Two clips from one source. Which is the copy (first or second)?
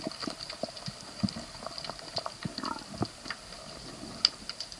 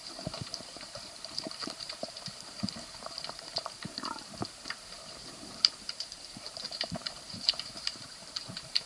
second